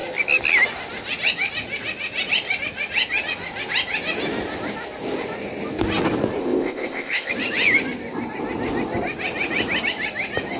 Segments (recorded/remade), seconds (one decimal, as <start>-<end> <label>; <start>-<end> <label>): 0.0-6.4 recorded; 6.4-7.3 remade; 7.3-10.6 recorded